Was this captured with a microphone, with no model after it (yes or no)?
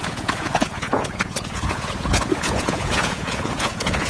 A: no